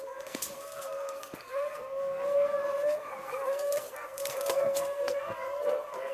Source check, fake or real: fake